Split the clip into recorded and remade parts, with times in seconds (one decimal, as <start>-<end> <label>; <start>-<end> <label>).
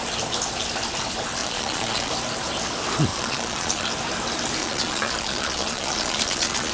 0.0-1.4 recorded; 1.4-2.1 remade; 2.1-3.1 recorded; 3.1-3.9 remade; 3.9-4.6 recorded; 4.6-6.7 remade